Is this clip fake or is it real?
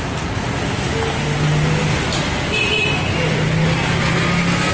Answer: real